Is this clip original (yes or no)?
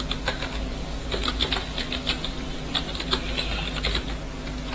yes